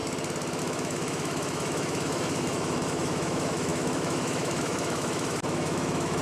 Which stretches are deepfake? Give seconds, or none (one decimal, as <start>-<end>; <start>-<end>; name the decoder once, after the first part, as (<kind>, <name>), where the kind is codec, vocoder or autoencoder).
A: 0.6-6.2 (autoencoder, DAC-VAE)